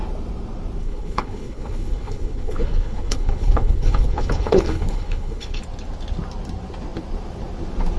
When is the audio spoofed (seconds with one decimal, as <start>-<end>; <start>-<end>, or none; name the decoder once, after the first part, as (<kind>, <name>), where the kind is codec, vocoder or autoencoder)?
0.8-5.6 (codec, HILCodec)